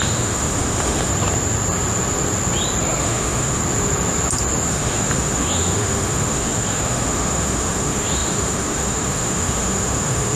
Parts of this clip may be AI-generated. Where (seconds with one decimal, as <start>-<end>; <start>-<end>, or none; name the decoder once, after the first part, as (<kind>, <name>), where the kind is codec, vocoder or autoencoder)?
0.0-1.1 (autoencoder, DAC-VAE); 3.0-3.6; 4.7-10.4